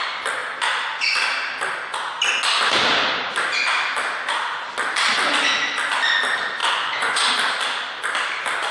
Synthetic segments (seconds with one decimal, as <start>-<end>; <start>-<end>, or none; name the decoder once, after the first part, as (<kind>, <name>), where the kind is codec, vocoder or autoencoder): 6.6-7.3 (vocoder, Vocos)